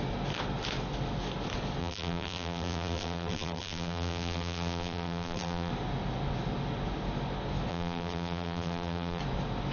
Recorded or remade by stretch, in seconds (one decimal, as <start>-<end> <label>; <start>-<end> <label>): 0.0-1.8 recorded; 1.8-5.7 remade; 5.7-7.7 recorded; 7.7-9.2 remade; 9.2-9.7 recorded